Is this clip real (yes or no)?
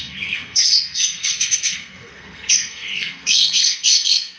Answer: no